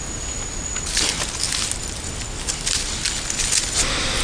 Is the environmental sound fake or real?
real